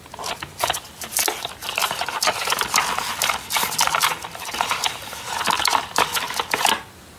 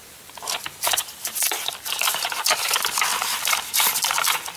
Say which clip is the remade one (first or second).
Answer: second